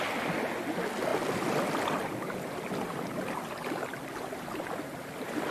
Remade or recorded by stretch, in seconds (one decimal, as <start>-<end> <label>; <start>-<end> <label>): 0.0-5.5 recorded